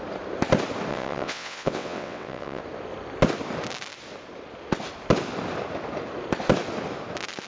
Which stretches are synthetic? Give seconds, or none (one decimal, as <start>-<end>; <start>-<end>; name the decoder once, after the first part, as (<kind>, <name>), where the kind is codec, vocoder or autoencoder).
0.9-2.6 (vocoder, WaveNeXt)